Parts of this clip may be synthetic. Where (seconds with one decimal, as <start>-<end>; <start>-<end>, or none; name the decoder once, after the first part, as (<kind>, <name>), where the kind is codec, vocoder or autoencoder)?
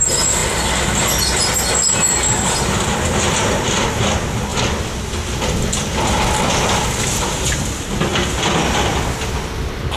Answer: none